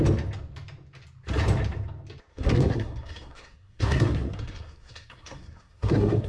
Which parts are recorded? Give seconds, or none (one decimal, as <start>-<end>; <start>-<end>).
0.0-2.3